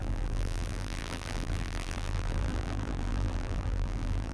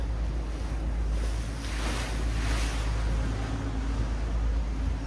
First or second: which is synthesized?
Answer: first